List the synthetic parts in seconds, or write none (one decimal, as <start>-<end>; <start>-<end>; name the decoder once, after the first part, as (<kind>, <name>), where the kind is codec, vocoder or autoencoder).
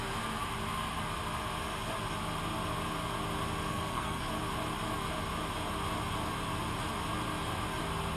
3.7-4.3 (codec, SNAC)